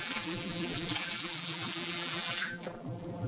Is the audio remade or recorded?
remade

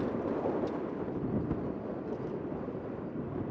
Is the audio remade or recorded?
recorded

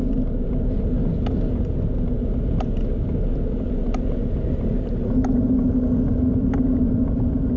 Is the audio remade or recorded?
recorded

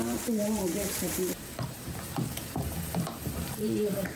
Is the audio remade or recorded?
remade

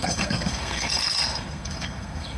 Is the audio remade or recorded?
remade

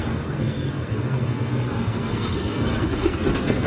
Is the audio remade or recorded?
remade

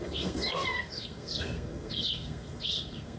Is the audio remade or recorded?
remade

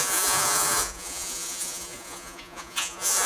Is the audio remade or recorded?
remade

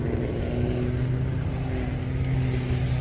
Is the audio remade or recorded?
recorded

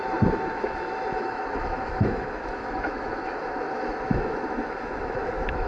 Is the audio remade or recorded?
remade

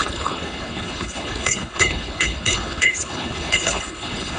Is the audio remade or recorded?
remade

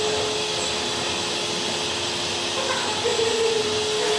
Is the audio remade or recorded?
recorded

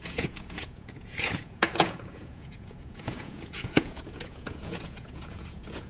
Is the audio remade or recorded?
remade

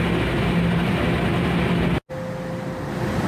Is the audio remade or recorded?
recorded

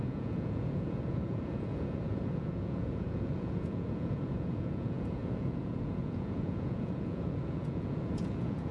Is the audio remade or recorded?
remade